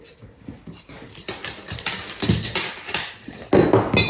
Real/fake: real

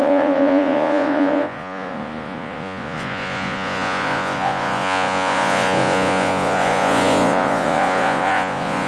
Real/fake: fake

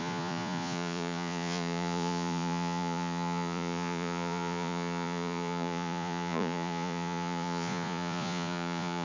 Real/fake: fake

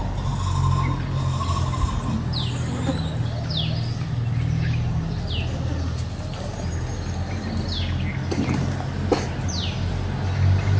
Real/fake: real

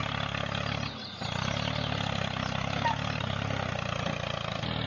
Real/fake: real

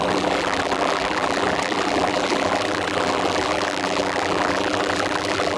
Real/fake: fake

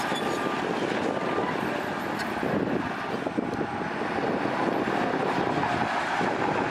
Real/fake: real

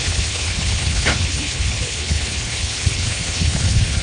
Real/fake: fake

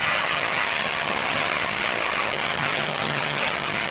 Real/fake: fake